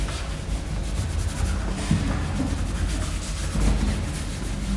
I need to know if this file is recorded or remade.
recorded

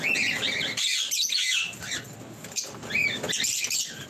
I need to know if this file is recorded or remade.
recorded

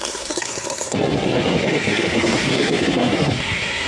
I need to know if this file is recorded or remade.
remade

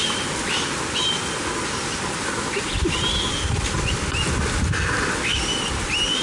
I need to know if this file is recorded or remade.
recorded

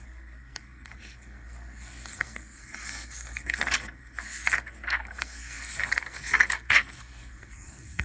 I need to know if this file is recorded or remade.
remade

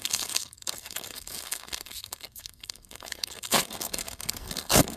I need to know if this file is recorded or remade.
remade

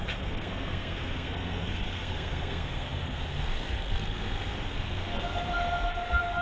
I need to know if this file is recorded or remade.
remade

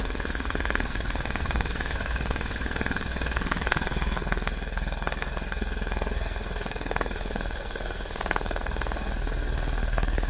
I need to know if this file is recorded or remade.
remade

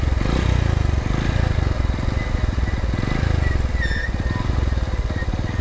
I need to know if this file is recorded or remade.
recorded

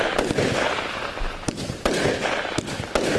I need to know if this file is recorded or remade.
recorded